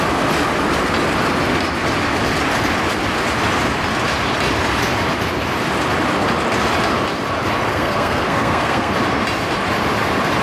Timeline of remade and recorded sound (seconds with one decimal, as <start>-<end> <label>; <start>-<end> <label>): 0.0-7.7 recorded; 7.7-8.9 remade; 8.9-10.4 recorded